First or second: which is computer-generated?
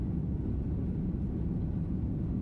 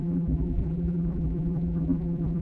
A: second